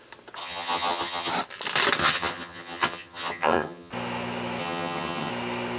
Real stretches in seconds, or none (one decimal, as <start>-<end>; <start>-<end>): 0.0-0.4; 1.3-2.0; 3.9-4.6; 5.3-5.8